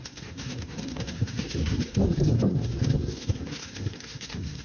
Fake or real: fake